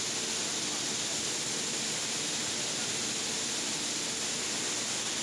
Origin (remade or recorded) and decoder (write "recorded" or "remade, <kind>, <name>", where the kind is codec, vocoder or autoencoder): recorded